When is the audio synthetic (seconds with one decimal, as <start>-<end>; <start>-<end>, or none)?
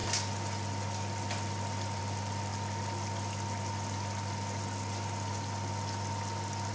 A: none